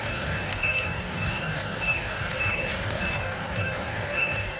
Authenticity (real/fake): fake